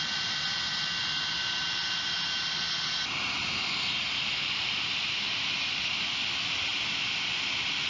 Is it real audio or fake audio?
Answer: real